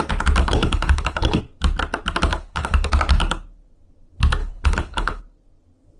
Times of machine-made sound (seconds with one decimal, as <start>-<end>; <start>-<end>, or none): 0.4-1.4; 2.3-2.9; 4.4-5.2